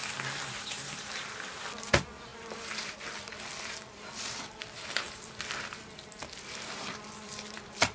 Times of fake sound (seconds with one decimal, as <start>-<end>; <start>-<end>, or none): none